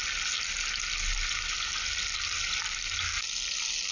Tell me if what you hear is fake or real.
real